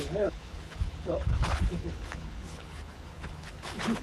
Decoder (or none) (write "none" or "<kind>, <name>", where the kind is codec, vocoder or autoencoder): codec, HILCodec